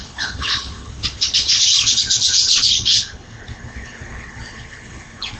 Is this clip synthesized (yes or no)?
yes